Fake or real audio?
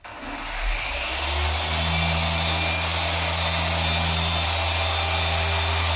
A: real